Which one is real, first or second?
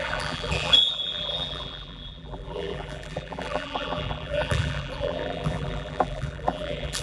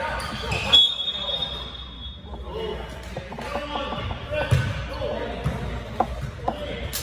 second